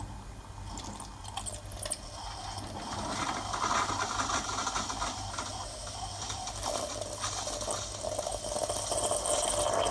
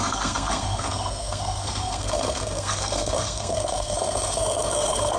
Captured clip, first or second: first